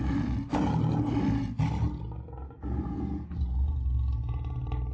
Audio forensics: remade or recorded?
recorded